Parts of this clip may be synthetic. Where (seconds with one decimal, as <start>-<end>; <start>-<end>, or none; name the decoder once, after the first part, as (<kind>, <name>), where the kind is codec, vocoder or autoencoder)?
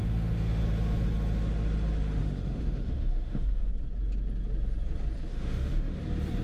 0.0-0.6 (autoencoder, DAC-VAE); 2.2-3.7; 5.3-6.0